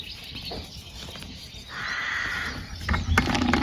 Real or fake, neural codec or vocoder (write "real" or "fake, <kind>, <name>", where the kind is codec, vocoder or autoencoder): real